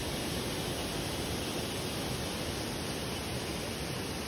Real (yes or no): yes